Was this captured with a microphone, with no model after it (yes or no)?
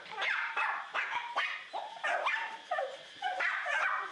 no